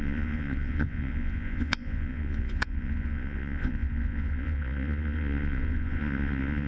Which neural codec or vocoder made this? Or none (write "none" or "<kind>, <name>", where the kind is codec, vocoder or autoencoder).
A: vocoder, Vocos